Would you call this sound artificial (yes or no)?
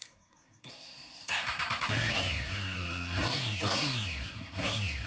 yes